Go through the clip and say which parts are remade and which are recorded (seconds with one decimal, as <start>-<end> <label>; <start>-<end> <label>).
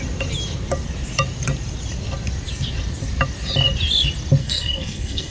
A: 0.0-4.4 recorded; 4.4-5.3 remade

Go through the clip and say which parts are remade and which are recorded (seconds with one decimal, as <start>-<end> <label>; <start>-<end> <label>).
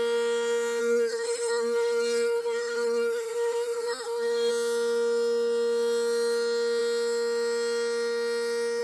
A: 0.0-0.8 recorded; 0.8-4.5 remade; 4.5-8.8 recorded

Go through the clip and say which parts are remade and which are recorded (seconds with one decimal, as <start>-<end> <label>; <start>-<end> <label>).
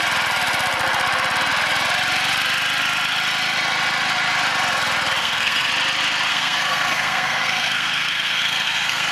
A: 0.0-5.2 recorded; 5.2-5.7 remade; 5.7-6.3 recorded; 6.3-9.1 remade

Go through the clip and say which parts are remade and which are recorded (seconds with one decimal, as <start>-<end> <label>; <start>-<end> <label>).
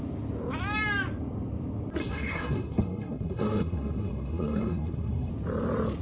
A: 0.0-2.0 recorded; 2.0-5.3 remade; 5.3-6.0 recorded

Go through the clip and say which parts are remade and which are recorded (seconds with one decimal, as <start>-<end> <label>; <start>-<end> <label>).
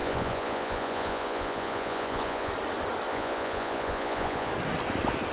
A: 0.0-2.5 remade; 2.5-3.1 recorded; 3.1-4.5 remade; 4.5-5.3 recorded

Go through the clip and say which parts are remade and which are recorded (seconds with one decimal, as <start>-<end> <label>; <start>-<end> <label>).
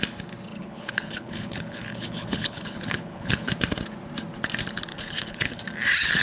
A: 0.0-0.5 recorded; 0.5-3.5 remade; 3.5-4.9 recorded; 4.9-5.6 remade; 5.6-6.2 recorded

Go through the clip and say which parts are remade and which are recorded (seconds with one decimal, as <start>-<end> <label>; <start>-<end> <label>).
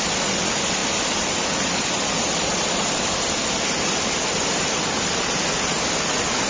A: 0.0-0.8 remade; 0.8-4.7 recorded; 4.7-6.5 remade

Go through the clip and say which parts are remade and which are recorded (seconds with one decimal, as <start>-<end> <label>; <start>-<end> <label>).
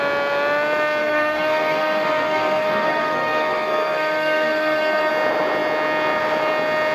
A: 0.0-1.0 recorded; 1.0-5.1 remade; 5.1-6.9 recorded